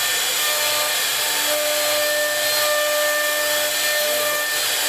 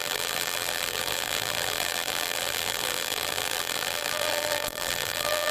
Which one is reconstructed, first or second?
second